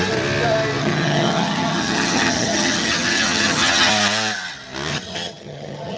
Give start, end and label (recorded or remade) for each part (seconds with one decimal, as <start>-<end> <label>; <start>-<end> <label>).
0.0-0.8 recorded; 0.8-3.9 remade; 3.9-4.9 recorded; 4.9-6.0 remade